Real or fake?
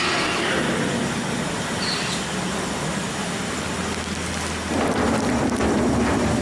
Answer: real